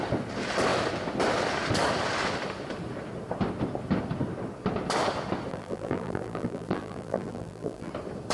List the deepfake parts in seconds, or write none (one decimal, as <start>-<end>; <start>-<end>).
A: 5.5-7.9